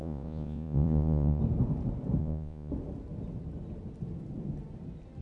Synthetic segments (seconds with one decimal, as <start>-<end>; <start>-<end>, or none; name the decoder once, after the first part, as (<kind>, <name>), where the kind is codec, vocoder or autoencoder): 0.0-1.4 (vocoder, Vocos); 2.2-2.7